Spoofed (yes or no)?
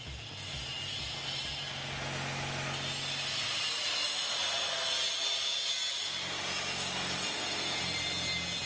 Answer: no